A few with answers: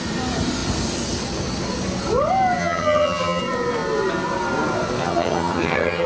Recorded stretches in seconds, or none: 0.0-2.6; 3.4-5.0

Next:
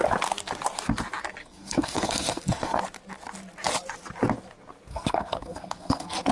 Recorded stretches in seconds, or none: 0.0-1.4; 2.8-4.9

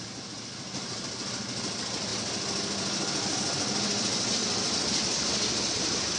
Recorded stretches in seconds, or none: 0.0-6.2

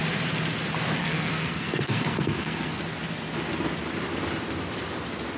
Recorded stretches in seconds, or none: 0.0-1.0; 2.8-5.4

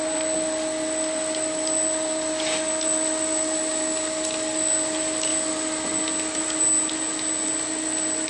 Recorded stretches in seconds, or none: 0.0-8.3